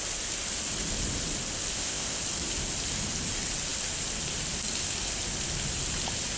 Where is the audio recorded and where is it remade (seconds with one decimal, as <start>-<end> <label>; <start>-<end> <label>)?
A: 0.0-1.7 recorded; 1.7-2.2 remade; 2.2-6.4 recorded

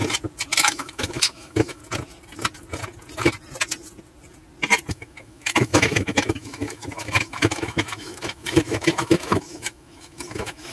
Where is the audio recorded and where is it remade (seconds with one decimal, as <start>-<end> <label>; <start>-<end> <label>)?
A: 0.0-0.6 recorded; 0.6-1.8 remade; 1.8-4.9 recorded; 4.9-10.7 remade